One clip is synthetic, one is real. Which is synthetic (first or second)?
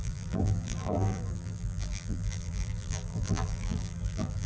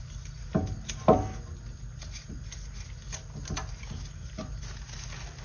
first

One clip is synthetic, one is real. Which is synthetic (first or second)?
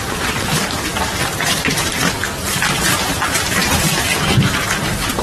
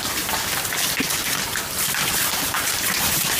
first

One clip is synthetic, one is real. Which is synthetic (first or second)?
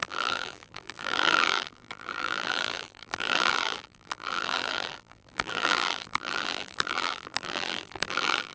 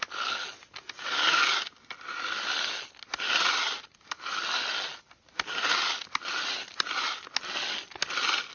first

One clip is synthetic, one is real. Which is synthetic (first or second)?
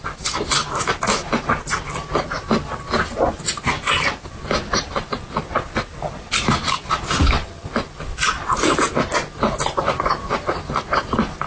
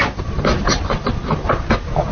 second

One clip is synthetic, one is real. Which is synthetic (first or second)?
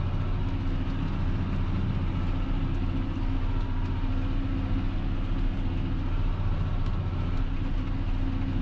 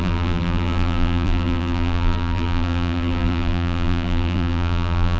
second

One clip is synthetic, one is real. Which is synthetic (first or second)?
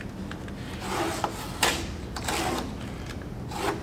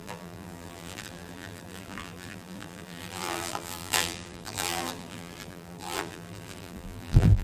second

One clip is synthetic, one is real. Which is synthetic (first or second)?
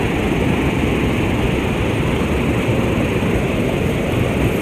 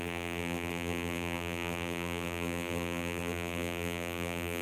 second